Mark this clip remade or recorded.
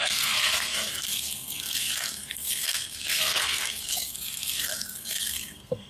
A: remade